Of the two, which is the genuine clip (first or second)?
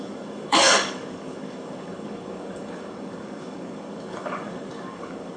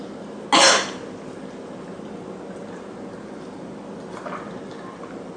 second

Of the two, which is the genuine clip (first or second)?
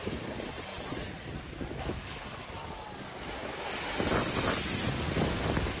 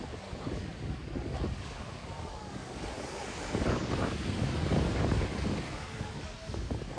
first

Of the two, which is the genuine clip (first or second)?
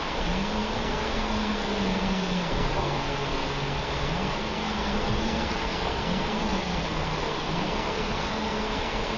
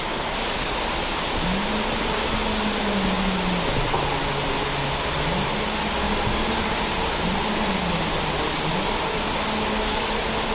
second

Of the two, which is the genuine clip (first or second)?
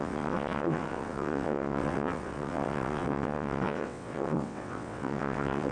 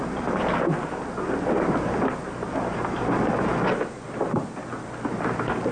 second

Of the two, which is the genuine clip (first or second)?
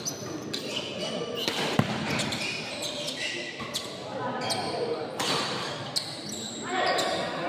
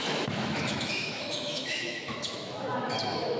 first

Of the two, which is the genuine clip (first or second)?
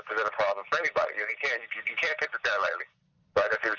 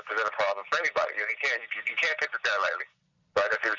second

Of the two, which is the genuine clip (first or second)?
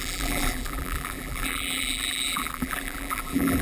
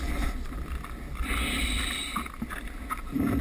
second